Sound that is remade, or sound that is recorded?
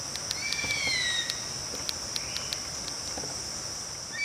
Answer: recorded